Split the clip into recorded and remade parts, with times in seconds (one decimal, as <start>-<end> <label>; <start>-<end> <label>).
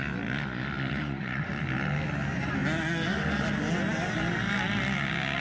0.0-0.9 recorded; 0.9-1.5 remade; 1.5-5.4 recorded